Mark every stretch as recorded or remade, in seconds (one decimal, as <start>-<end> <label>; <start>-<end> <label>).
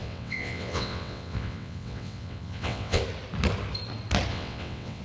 0.0-3.0 remade; 3.0-4.3 recorded; 4.3-5.0 remade